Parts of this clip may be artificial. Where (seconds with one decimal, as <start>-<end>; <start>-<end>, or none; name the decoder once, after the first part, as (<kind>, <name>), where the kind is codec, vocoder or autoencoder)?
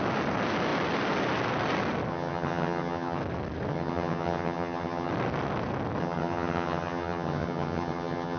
2.1-3.2 (vocoder, HiFi-GAN); 3.7-5.1; 6.0-8.4